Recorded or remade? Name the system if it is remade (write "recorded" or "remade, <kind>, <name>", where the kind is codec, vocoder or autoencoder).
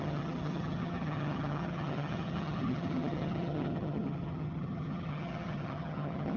remade, vocoder, HiFi-GAN